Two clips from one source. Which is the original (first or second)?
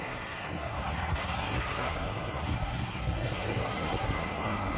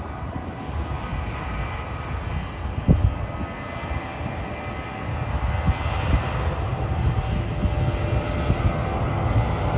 second